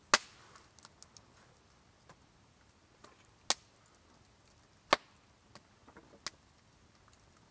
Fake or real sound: real